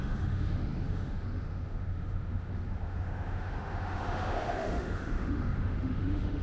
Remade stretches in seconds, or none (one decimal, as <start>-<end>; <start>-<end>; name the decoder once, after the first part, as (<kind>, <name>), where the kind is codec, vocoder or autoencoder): 0.0-6.4 (autoencoder, DAC-VAE)